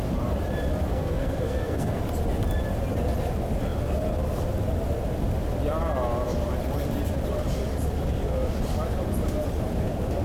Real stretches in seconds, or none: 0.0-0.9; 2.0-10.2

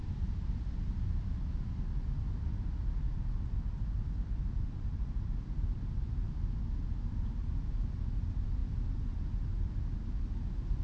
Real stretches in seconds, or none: 0.0-10.8

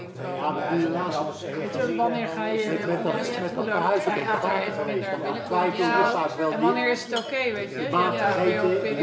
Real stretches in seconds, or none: 0.0-2.5; 4.7-9.0

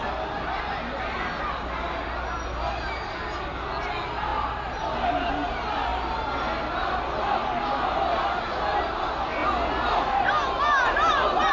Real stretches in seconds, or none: 0.0-11.5